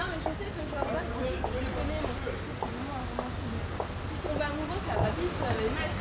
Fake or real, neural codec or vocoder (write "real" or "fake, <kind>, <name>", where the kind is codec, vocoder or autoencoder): real